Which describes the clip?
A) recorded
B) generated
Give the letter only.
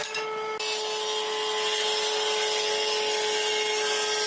A